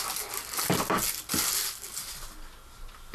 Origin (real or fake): real